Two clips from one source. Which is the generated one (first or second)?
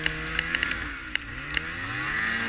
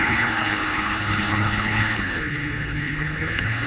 second